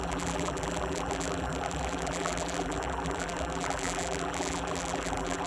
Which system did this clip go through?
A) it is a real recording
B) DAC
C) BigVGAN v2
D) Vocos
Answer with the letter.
C